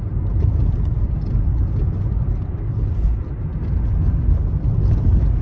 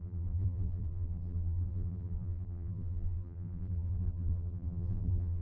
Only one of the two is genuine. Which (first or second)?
first